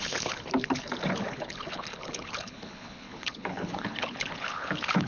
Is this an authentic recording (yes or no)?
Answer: no